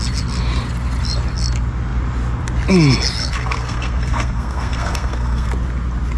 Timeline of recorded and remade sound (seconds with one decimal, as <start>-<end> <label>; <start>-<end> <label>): 0.0-3.2 recorded; 3.2-5.5 remade; 5.5-6.2 recorded